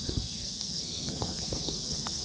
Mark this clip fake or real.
fake